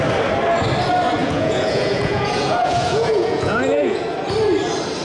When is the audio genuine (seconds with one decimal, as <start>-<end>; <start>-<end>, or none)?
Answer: 0.0-1.2; 4.0-5.0